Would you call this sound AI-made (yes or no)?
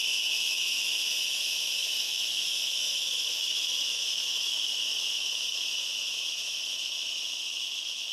yes